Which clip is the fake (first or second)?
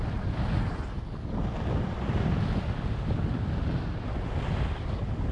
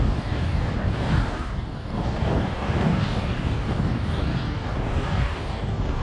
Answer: second